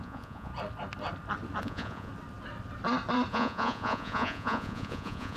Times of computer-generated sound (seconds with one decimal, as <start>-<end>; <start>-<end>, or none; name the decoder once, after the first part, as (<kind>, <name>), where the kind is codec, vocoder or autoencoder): 0.0-0.5 (vocoder, Vocos); 1.6-2.1; 3.3-5.4